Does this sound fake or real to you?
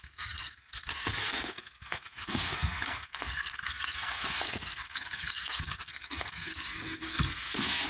fake